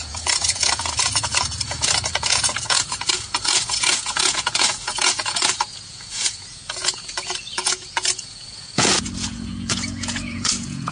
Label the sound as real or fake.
fake